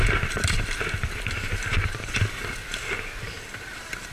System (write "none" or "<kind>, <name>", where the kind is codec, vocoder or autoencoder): none